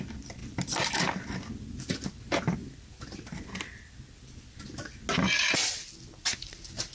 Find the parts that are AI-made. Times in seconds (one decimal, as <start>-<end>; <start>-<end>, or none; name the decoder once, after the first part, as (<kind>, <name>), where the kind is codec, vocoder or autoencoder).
none